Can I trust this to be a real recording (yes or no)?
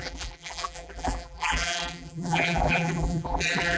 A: no